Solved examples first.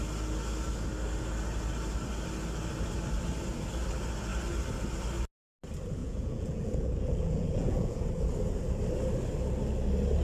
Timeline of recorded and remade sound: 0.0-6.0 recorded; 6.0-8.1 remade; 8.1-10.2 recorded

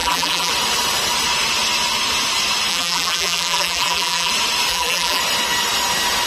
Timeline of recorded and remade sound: 0.0-0.5 remade; 0.5-2.7 recorded; 2.7-4.3 remade; 4.3-4.7 recorded; 4.7-5.2 remade; 5.2-6.3 recorded

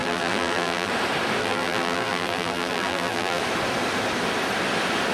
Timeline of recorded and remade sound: 0.0-0.9 remade; 0.9-1.4 recorded; 1.4-3.4 remade; 3.4-5.1 recorded

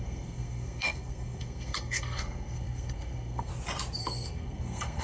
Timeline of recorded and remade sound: 0.0-3.5 remade; 3.5-4.0 recorded; 4.0-5.0 remade

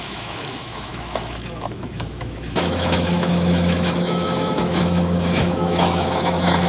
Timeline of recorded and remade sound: 0.0-6.7 remade

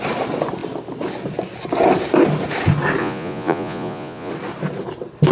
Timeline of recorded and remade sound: 0.0-3.0 recorded; 3.0-4.3 remade; 4.3-5.3 recorded

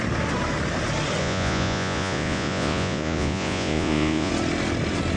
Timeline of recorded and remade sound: 0.0-1.2 recorded; 1.2-4.3 remade; 4.3-5.2 recorded

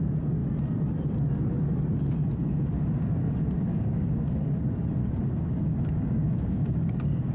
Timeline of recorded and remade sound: 0.0-3.7 recorded; 3.7-4.6 remade; 4.6-5.0 recorded; 5.0-7.3 remade